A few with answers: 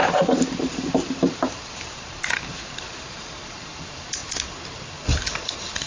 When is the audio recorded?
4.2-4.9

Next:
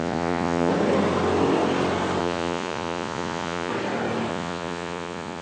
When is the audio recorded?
0.7-2.2; 3.7-4.3

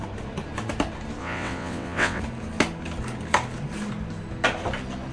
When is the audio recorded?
0.0-1.2; 2.2-5.1

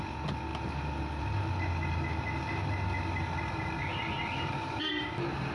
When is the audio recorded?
0.0-5.5

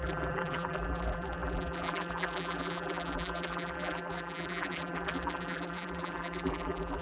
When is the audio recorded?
none

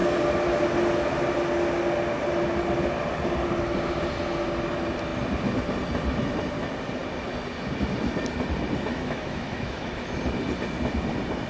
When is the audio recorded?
0.0-8.9; 10.2-11.5

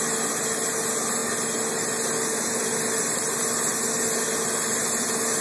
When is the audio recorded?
0.0-5.4